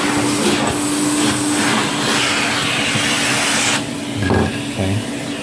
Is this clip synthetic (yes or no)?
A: no